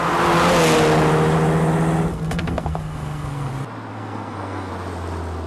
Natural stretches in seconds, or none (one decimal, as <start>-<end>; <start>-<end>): 0.0-2.1; 3.5-3.9; 4.7-5.5